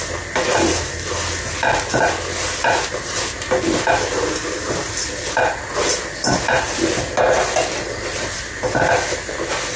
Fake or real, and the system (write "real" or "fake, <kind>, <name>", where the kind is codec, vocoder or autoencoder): real